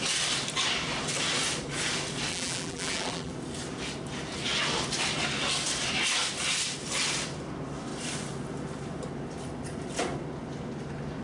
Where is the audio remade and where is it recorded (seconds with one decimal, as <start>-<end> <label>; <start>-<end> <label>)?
0.0-2.3 recorded; 2.3-3.3 remade; 3.3-11.2 recorded